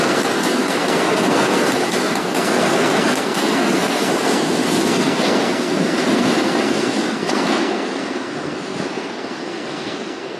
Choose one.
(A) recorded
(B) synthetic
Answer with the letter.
B